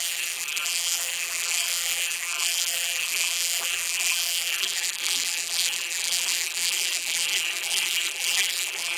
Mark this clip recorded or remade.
remade